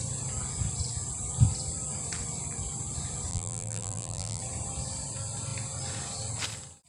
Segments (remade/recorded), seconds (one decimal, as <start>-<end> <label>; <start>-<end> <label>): 0.0-3.3 recorded; 3.3-4.4 remade; 4.4-6.9 recorded